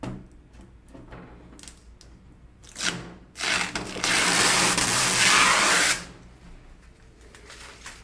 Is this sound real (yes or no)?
yes